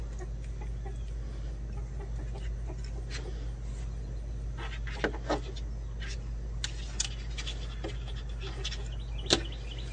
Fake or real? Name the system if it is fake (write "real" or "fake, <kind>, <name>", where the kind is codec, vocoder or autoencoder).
real